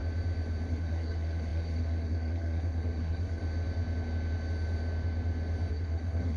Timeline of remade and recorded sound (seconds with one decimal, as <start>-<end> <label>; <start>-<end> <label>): 0.0-0.7 recorded; 0.7-3.4 remade; 3.4-5.7 recorded; 5.7-6.4 remade

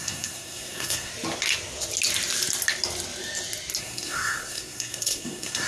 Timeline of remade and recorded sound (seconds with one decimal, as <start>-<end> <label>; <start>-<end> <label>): 0.0-1.1 remade; 1.1-3.8 recorded; 3.8-5.7 remade

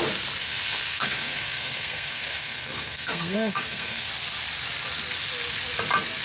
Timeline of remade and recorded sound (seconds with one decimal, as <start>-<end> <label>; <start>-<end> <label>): 0.0-0.4 recorded; 0.4-4.1 remade; 4.1-6.2 recorded